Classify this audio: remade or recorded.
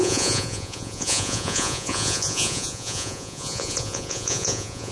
remade